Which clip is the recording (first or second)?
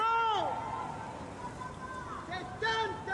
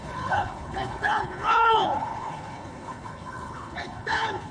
first